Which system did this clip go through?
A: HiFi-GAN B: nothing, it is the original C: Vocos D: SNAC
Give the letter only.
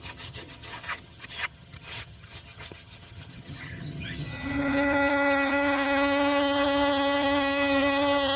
A